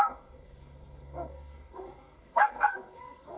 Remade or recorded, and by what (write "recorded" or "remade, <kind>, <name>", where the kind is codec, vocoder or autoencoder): remade, codec, SNAC